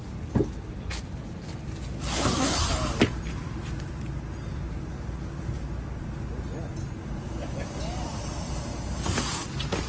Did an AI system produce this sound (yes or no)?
no